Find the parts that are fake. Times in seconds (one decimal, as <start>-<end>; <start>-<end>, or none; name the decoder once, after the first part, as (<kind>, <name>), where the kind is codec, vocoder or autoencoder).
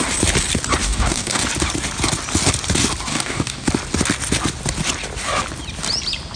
0.8-1.4 (codec, DAC); 3.1-3.7